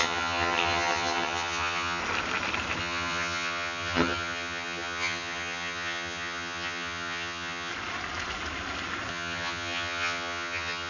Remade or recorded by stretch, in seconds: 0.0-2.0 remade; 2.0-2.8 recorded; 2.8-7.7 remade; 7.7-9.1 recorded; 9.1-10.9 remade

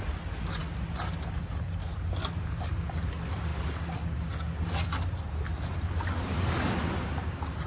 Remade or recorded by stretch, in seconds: 0.0-7.7 recorded

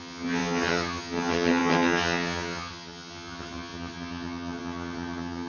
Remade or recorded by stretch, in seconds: 0.0-5.5 remade